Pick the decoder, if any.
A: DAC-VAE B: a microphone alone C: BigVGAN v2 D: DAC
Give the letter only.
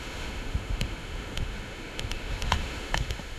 A